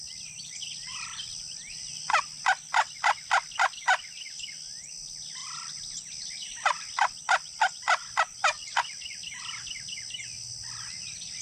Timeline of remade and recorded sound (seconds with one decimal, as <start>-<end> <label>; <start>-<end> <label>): 0.0-11.4 recorded

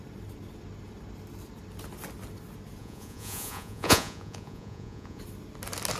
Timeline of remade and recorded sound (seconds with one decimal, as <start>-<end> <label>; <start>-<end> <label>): 0.0-2.8 recorded; 2.8-5.2 remade; 5.2-6.0 recorded